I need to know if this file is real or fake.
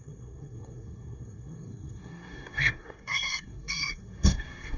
fake